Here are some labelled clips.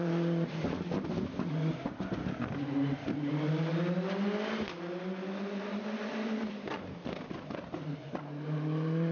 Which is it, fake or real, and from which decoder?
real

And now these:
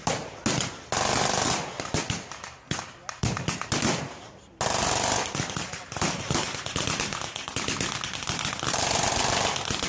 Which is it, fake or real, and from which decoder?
real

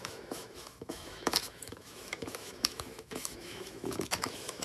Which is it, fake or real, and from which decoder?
fake, autoencoder, DAC-VAE